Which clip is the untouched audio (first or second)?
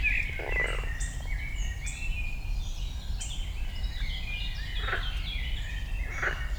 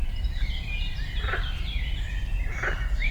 first